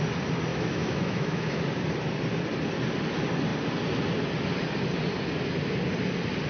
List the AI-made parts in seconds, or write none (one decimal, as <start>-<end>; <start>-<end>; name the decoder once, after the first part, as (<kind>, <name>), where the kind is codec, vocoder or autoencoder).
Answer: 0.5-1.6 (autoencoder, DAC-VAE)